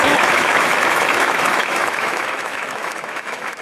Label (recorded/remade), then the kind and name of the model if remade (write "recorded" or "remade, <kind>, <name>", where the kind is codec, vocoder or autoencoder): remade, autoencoder, DAC-VAE